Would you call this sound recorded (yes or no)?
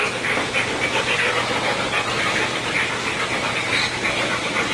yes